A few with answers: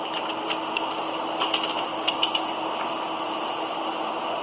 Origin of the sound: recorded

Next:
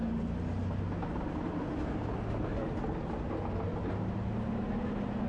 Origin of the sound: recorded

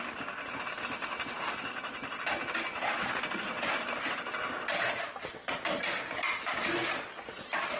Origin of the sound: recorded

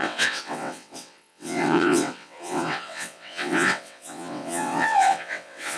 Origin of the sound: remade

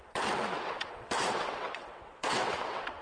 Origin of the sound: remade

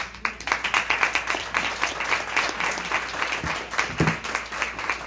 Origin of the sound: recorded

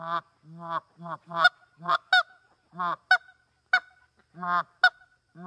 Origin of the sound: recorded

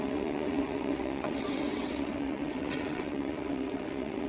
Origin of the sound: remade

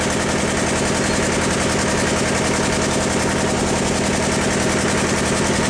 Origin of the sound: recorded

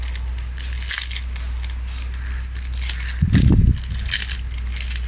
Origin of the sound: recorded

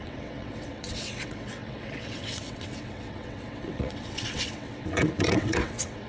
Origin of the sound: remade